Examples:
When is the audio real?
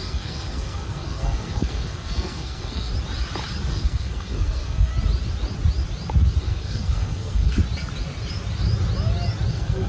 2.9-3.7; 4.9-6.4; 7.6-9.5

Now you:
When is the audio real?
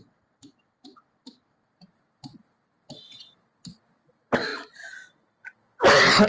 0.0-6.3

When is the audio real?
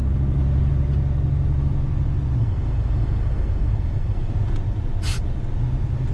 0.0-2.4; 4.3-6.1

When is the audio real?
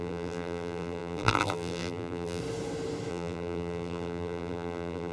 2.4-3.1